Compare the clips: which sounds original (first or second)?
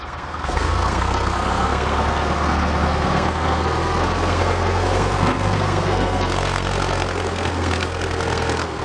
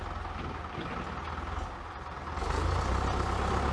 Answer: second